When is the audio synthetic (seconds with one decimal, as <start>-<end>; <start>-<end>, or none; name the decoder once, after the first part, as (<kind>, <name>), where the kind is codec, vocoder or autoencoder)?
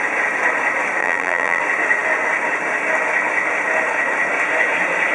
1.0-1.6 (vocoder, BigVGAN v2)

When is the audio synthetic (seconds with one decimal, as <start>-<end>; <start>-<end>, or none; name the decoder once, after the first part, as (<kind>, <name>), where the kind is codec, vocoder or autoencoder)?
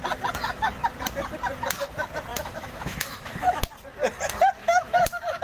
2.3-3.6 (autoencoder, DAC-VAE); 4.6-5.4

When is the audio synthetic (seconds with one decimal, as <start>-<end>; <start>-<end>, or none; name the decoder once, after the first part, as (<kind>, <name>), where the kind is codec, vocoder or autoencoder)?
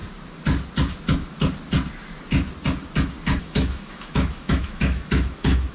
3.4-5.7 (autoencoder, DAC-VAE)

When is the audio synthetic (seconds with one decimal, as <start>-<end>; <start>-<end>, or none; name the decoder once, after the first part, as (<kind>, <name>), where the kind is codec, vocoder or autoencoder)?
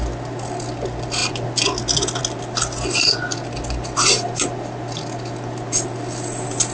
none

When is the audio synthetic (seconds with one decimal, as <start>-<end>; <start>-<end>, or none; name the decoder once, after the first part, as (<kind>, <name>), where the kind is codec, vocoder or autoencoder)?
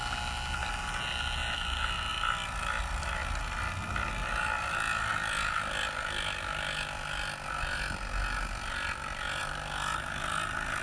none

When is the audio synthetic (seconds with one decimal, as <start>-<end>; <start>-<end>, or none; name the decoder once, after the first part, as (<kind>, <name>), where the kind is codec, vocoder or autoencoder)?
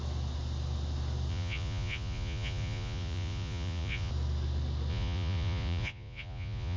1.3-4.1 (vocoder, Vocos); 4.9-6.8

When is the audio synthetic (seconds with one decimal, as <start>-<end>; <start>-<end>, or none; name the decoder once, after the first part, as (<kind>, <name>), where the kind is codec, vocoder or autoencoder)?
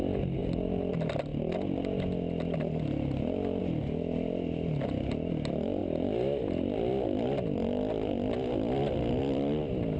0.4-0.9 (vocoder, BigVGAN v2)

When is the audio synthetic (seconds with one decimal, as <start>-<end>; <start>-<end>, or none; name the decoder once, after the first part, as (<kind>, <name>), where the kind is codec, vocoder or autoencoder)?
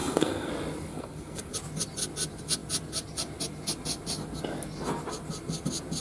0.0-0.5 (codec, SNAC); 0.9-1.5